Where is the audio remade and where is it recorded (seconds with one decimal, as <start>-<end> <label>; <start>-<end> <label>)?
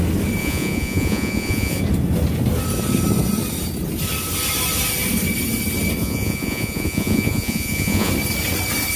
0.0-0.4 recorded; 0.4-1.8 remade; 1.8-6.0 recorded; 6.0-8.1 remade; 8.1-9.0 recorded